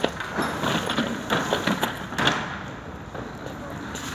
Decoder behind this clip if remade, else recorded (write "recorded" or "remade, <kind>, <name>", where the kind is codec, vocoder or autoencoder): recorded